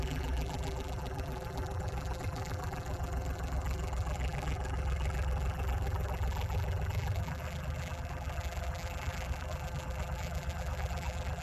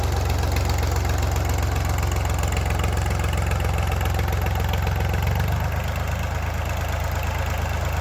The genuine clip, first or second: second